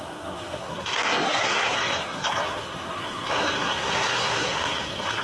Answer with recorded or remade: remade